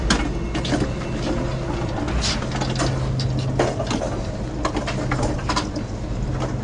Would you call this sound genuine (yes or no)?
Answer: yes